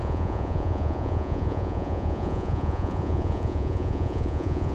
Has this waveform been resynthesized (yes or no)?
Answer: yes